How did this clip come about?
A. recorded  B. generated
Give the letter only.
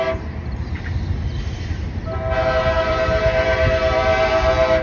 B